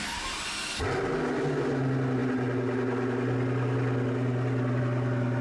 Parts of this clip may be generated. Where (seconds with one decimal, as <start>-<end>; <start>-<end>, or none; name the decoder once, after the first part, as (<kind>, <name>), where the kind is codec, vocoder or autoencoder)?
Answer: none